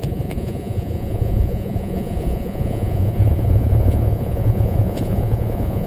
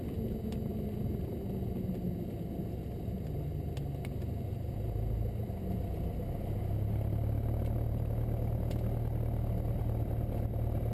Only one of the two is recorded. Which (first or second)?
second